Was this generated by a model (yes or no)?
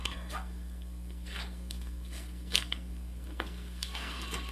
yes